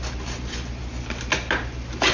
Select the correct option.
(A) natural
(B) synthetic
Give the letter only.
A